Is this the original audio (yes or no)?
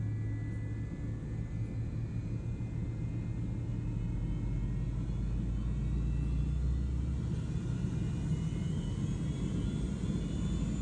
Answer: yes